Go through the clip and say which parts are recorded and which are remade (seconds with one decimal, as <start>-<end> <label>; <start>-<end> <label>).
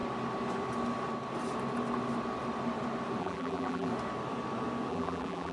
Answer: 0.0-3.2 recorded; 3.2-3.9 remade; 3.9-4.9 recorded; 4.9-5.5 remade